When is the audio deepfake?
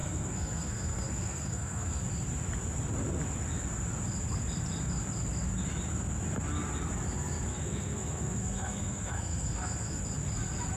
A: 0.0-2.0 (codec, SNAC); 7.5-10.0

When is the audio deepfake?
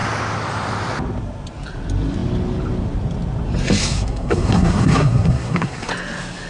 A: 3.8-5.9 (codec, SNAC)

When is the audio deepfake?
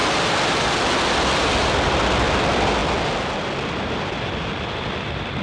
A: none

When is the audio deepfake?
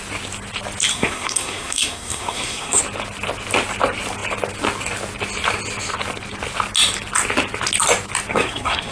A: 0.9-2.8 (codec, SNAC); 8.3-8.9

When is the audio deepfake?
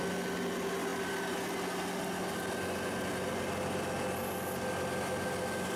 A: none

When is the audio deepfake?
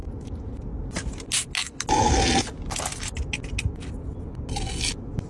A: none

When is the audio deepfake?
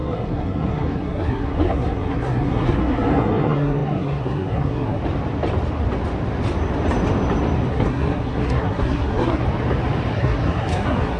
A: 0.0-5.0 (codec, SNAC); 7.7-9.4; 10.1-11.2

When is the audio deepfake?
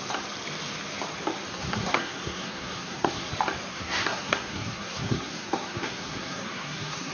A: 1.5-3.3 (codec, SNAC); 3.7-7.1